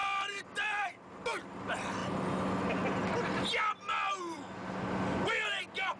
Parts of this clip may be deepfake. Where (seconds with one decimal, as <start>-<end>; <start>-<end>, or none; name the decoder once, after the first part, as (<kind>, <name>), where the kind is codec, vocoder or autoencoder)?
0.0-2.0 (vocoder, BigVGAN v2); 5.6-6.0